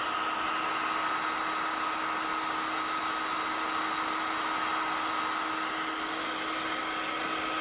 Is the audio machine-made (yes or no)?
no